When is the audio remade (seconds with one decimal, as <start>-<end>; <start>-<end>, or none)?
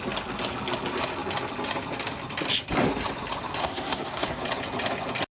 3.6-4.4